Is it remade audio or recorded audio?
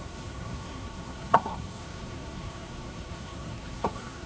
remade